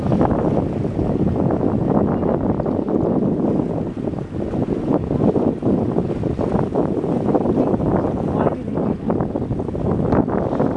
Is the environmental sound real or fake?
real